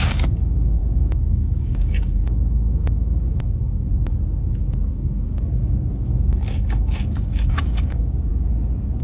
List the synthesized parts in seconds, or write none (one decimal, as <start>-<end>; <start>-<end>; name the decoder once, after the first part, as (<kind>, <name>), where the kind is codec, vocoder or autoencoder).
0.0-3.9 (codec, DAC); 4.4-8.3